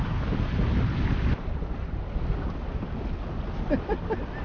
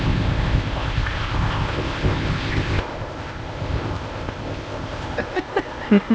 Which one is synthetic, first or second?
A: second